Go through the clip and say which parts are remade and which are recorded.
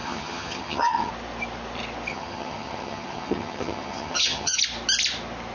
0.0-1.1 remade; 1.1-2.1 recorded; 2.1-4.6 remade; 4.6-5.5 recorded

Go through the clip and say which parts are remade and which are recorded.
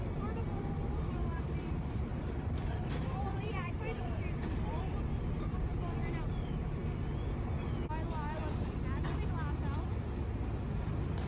0.0-6.8 remade; 6.8-10.8 recorded; 10.8-11.3 remade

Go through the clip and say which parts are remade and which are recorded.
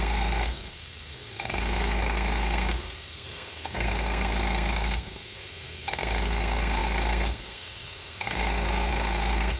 0.0-9.6 remade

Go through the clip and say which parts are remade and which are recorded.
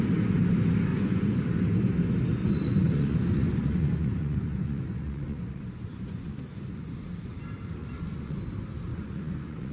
0.0-0.9 recorded; 0.9-1.4 remade; 1.4-2.4 recorded; 2.4-6.8 remade; 6.8-7.8 recorded; 7.8-8.4 remade; 8.4-8.9 recorded; 8.9-9.7 remade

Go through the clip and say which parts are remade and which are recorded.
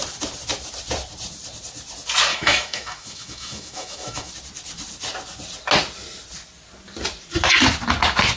0.0-2.3 recorded; 2.3-4.3 remade; 4.3-8.4 recorded